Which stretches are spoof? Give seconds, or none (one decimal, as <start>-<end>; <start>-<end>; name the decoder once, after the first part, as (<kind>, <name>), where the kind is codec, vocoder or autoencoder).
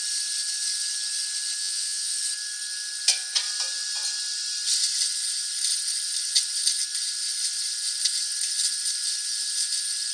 1.6-2.2 (vocoder, Vocos)